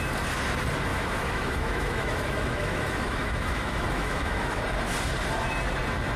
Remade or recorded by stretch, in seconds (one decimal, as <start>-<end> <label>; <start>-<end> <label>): 0.0-0.9 recorded; 0.9-4.6 remade; 4.6-6.2 recorded